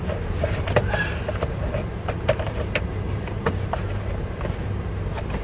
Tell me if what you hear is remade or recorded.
remade